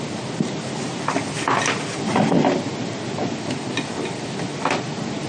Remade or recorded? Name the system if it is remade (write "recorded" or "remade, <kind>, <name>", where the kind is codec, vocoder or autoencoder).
recorded